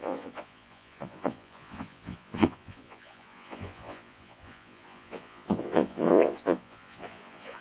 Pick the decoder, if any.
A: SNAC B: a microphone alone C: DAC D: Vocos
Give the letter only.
D